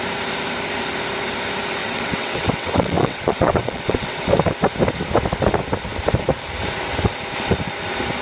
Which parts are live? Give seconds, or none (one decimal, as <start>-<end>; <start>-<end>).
0.0-1.8; 4.3-8.2